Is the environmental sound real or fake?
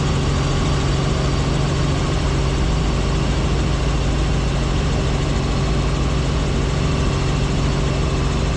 real